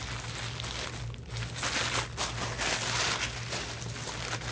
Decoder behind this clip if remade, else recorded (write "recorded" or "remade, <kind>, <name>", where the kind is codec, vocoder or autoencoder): recorded